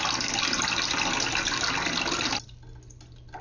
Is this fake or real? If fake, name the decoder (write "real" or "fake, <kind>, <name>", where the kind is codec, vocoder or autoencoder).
real